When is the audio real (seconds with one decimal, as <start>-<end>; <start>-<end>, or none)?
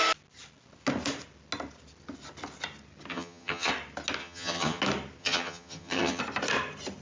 0.0-3.1; 3.7-4.2; 4.8-5.2; 6.2-7.0